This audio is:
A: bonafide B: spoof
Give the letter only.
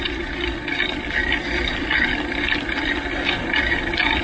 A